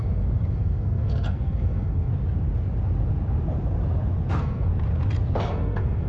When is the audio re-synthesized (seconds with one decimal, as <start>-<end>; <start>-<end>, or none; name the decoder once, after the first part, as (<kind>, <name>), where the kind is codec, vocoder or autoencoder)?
0.0-2.1 (codec, SNAC); 4.3-4.7; 5.5-6.1